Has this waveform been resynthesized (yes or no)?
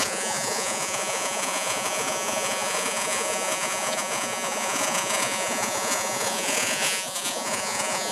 yes